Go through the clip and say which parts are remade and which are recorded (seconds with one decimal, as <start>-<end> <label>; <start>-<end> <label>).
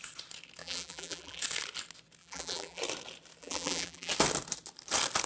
0.0-0.6 recorded; 0.6-1.4 remade; 1.4-2.2 recorded; 2.2-2.8 remade; 2.8-3.4 recorded; 3.4-4.1 remade; 4.1-5.3 recorded